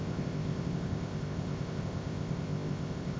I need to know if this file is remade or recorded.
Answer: remade